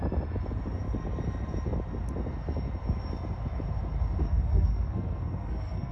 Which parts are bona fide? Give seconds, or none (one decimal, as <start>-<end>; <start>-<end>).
0.0-4.2